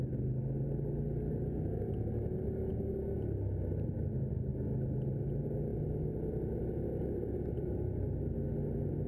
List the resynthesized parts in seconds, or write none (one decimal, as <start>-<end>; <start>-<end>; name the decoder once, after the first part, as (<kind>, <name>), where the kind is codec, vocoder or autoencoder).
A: none